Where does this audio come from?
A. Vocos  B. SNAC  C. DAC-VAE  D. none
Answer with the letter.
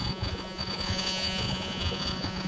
A